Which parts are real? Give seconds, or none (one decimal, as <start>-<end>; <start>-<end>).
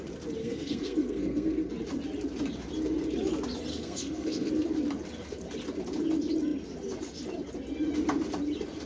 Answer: 0.0-0.4; 1.7-3.7; 4.5-8.9